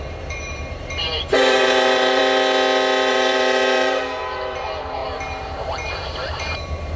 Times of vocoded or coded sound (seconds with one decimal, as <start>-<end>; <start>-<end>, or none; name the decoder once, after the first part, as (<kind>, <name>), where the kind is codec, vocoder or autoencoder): 0.0-2.2 (vocoder, BigVGAN v2); 3.1-7.0